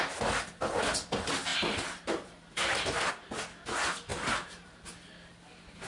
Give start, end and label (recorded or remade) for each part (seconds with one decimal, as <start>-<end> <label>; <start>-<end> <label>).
0.0-1.5 recorded; 1.5-3.1 remade; 3.1-4.1 recorded; 4.1-4.9 remade; 4.9-5.9 recorded